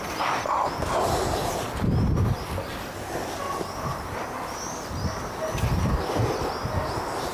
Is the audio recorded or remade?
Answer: recorded